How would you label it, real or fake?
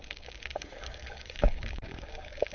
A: fake